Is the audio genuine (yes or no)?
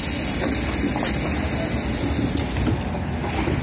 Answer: yes